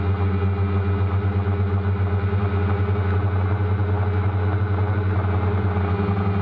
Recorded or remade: recorded